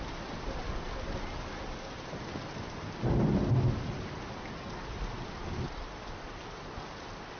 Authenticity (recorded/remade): recorded